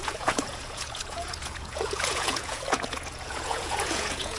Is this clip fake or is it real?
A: fake